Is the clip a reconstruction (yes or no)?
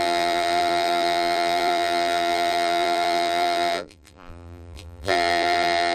yes